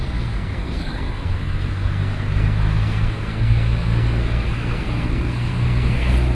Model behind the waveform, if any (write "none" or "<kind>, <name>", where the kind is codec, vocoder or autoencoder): codec, SNAC